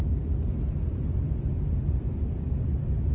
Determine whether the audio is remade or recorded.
recorded